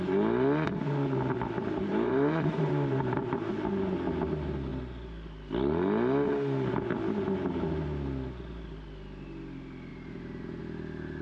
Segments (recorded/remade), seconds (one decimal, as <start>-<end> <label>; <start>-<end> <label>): 0.0-1.9 recorded; 1.9-3.5 remade; 3.5-9.9 recorded; 9.9-10.6 remade; 10.6-11.2 recorded